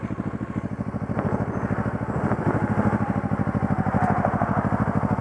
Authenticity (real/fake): real